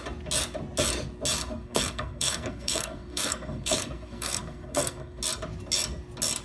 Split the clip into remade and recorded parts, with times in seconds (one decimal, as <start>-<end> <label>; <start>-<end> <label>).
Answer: 0.0-1.4 recorded; 1.4-5.2 remade; 5.2-6.4 recorded